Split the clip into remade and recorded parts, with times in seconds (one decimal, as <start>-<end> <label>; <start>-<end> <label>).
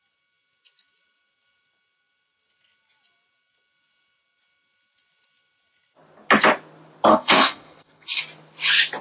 0.0-7.1 recorded; 7.1-8.2 remade; 8.2-9.0 recorded